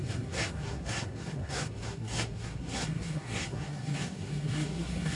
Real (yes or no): no